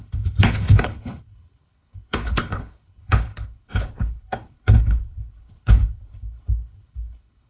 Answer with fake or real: fake